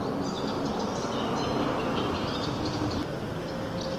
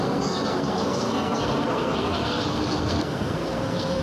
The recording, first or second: first